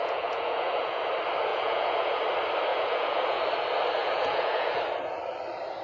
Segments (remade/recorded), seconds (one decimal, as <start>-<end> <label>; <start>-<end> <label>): 0.0-1.0 remade; 1.0-1.5 recorded; 1.5-2.2 remade; 2.2-2.7 recorded; 2.7-3.4 remade; 3.4-4.0 recorded; 4.0-4.8 remade; 4.8-5.8 recorded